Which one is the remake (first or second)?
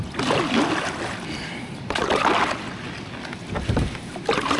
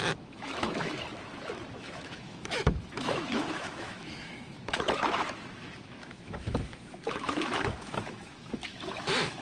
second